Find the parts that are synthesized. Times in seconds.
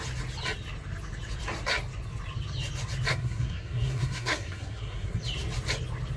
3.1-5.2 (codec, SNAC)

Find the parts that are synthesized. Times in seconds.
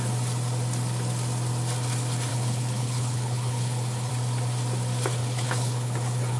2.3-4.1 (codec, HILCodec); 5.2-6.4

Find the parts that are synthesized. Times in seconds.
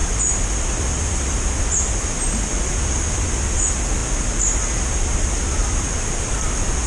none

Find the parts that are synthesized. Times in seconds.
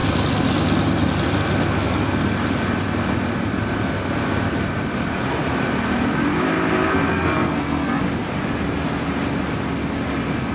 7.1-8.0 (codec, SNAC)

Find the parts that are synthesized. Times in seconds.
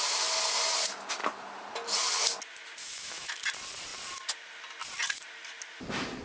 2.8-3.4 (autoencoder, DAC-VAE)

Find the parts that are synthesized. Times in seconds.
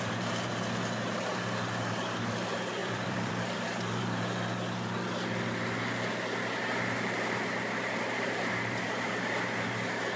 2.8-4.0 (vocoder, BigVGAN v2)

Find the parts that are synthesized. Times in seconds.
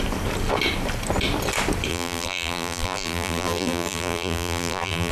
1.9-5.1 (vocoder, BigVGAN v2)